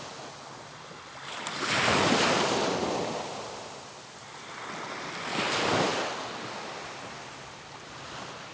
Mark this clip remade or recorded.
recorded